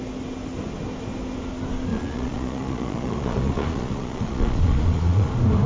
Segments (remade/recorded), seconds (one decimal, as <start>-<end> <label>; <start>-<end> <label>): 0.0-1.9 recorded; 1.9-5.3 remade; 5.3-5.7 recorded